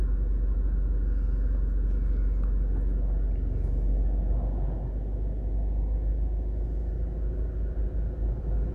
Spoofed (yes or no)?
no